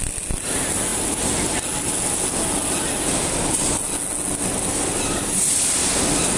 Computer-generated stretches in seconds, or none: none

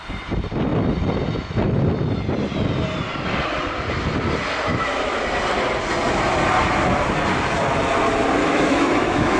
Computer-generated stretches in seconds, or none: 4.7-5.2 (autoencoder, DAC-VAE); 8.4-9.4

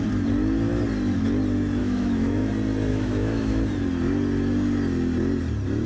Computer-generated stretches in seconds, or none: 1.8-2.5 (autoencoder, DAC-VAE); 2.9-3.6

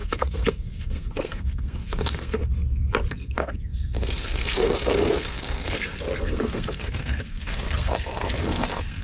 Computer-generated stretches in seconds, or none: 0.0-2.4 (codec, SNAC); 3.1-9.0

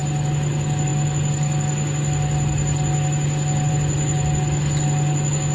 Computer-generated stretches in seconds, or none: none